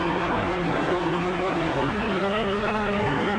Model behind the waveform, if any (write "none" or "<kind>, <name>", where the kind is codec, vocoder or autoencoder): codec, SNAC